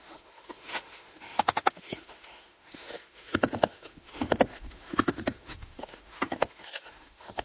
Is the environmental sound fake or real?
fake